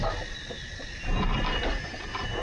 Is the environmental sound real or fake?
real